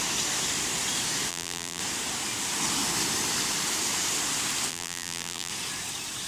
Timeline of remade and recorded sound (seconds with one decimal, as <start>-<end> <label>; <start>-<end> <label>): 0.0-1.3 recorded; 1.3-1.8 remade; 1.8-4.7 recorded; 4.7-5.5 remade; 5.5-6.3 recorded